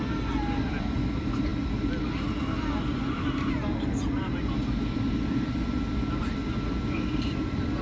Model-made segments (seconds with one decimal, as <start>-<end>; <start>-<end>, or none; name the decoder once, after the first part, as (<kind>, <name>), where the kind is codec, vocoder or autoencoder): none